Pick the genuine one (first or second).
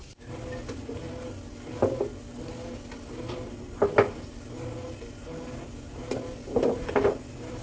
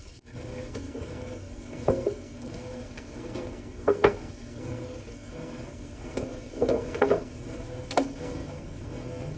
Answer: first